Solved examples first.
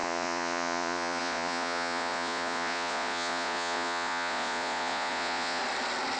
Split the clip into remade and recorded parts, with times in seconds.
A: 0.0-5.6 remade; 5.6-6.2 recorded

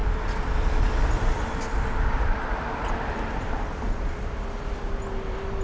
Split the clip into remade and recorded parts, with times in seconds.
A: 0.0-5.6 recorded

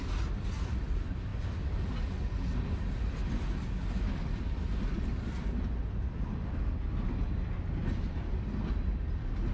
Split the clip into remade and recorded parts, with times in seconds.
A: 0.0-9.5 recorded

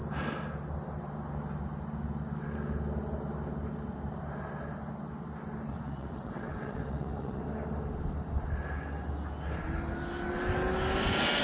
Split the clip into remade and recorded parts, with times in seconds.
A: 0.0-5.7 recorded; 5.7-7.4 remade; 7.4-11.4 recorded

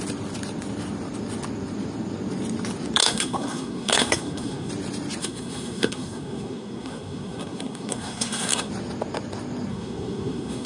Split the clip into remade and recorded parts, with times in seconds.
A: 0.0-3.0 recorded; 3.0-4.7 remade; 4.7-5.2 recorded; 5.2-8.7 remade; 8.7-9.7 recorded; 9.7-10.7 remade

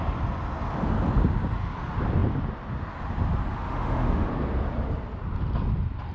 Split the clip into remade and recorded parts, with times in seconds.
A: 0.0-3.5 recorded; 3.5-4.3 remade; 4.3-6.1 recorded

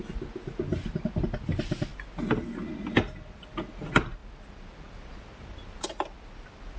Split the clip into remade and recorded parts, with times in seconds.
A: 0.0-6.8 recorded